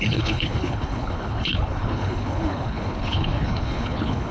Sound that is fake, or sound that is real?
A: fake